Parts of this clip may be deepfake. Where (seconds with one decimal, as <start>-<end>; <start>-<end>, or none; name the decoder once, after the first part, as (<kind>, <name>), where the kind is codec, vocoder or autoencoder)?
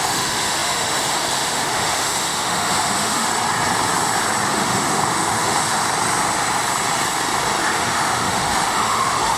0.0-3.3 (autoencoder, DAC-VAE); 4.5-5.8; 7.6-9.4